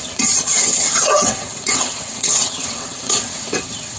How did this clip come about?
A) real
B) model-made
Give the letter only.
B